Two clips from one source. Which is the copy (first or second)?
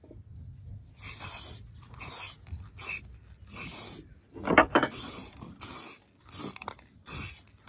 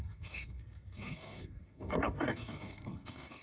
second